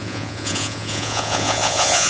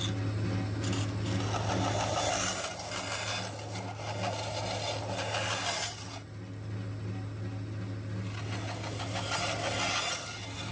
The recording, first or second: second